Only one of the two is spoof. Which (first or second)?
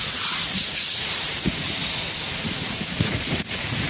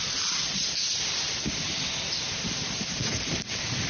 first